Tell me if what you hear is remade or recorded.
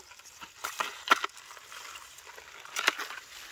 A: recorded